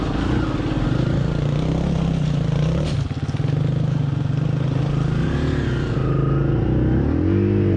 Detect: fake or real real